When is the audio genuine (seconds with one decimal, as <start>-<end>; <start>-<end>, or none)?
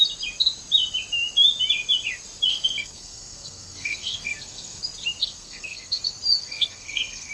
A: 0.0-2.5; 4.8-5.2; 6.0-6.4